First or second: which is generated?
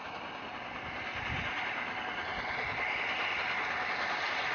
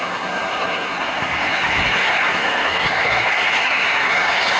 second